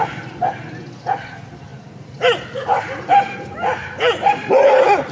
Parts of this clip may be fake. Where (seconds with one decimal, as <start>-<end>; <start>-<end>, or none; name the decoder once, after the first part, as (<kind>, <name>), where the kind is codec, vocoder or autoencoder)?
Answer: 1.7-5.1 (vocoder, BigVGAN v2)